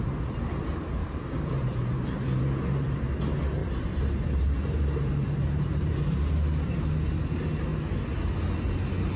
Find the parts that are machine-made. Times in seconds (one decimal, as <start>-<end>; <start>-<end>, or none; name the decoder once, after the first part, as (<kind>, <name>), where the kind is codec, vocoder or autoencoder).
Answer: 1.0-3.2 (vocoder, BigVGAN v2); 3.6-6.3